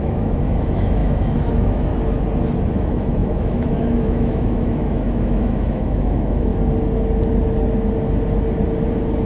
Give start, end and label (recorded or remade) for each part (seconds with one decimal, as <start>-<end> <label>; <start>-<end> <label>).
0.0-1.9 remade; 1.9-2.7 recorded; 2.7-6.5 remade; 6.5-9.3 recorded